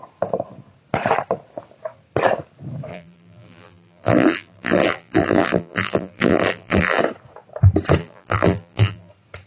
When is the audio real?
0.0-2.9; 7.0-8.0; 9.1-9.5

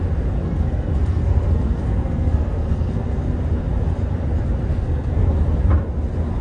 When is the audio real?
0.0-0.4; 3.2-4.7; 5.3-6.4

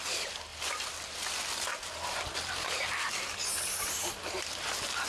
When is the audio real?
0.0-5.1

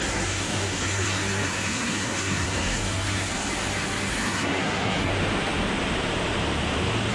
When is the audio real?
3.3-4.1; 5.1-7.1

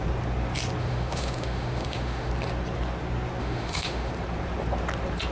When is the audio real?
0.0-0.8; 2.3-3.4; 4.1-5.3

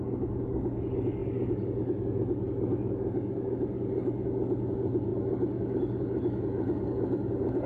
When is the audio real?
none

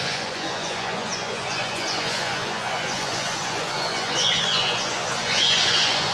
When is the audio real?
none

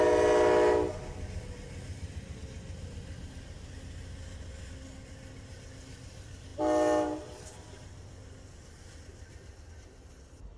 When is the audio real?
0.0-10.6